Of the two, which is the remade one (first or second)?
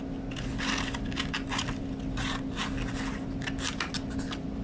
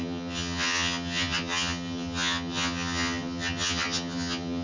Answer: second